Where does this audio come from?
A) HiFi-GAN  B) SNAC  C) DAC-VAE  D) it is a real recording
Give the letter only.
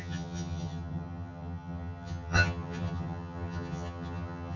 A